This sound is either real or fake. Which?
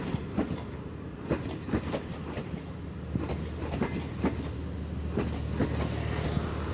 real